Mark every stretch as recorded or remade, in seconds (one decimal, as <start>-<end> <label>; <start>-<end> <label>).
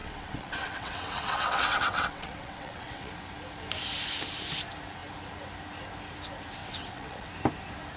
0.0-3.1 remade; 3.1-6.6 recorded; 6.6-7.3 remade; 7.3-8.0 recorded